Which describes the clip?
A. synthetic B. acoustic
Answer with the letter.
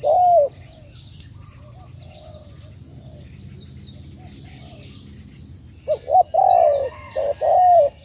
B